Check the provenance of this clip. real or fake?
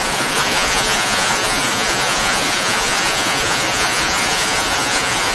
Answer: fake